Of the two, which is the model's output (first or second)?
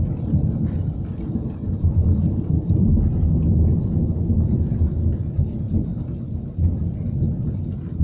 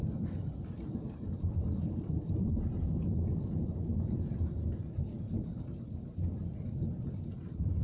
second